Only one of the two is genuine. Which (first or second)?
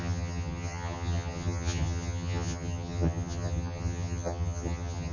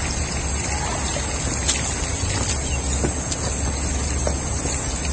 second